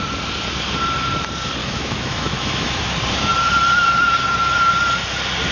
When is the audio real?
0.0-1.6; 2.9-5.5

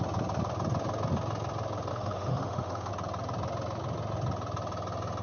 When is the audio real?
0.0-1.9; 2.9-5.2

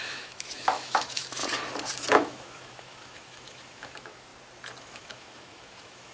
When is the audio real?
1.4-2.1; 4.3-4.8

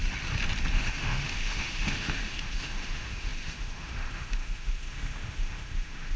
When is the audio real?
0.0-0.7

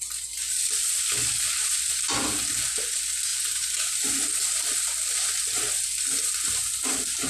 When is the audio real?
0.0-7.3